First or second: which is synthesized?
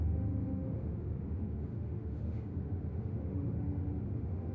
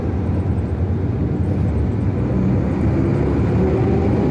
first